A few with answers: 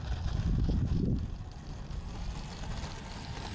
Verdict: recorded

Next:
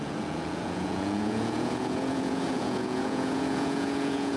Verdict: remade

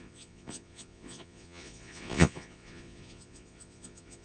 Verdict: remade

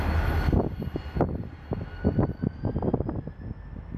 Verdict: recorded